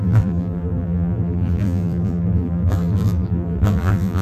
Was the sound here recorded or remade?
remade